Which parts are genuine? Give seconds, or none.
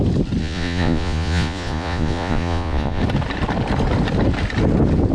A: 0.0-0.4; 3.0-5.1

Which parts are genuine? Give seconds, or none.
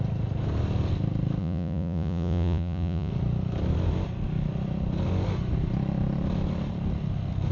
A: 0.0-1.4; 3.1-7.5